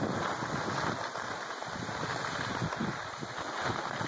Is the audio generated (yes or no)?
no